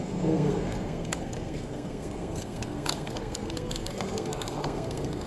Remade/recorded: remade